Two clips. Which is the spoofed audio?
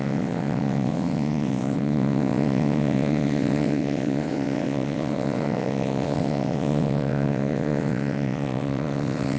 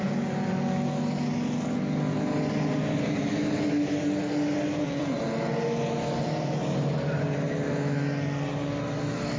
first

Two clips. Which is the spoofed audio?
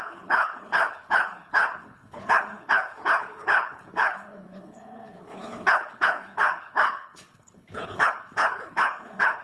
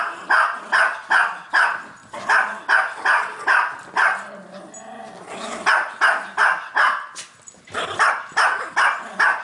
first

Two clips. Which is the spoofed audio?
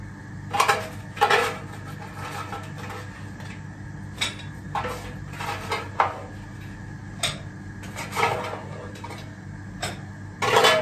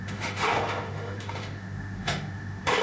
second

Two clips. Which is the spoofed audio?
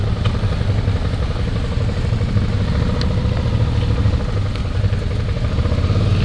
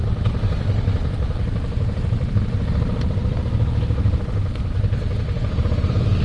second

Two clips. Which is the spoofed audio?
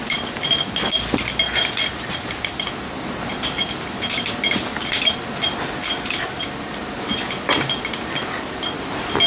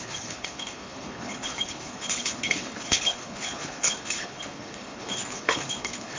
second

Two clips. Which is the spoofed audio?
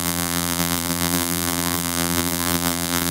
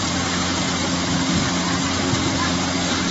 first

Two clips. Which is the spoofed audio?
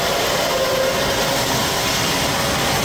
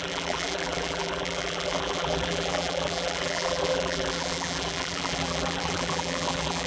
second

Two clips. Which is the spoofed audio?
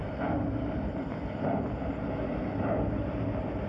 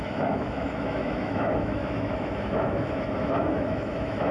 second